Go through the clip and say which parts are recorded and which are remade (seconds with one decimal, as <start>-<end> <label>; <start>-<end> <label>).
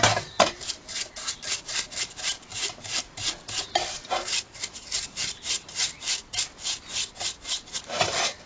0.0-6.9 remade; 6.9-7.6 recorded; 7.6-8.5 remade